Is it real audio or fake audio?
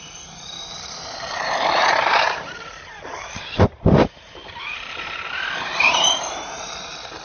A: fake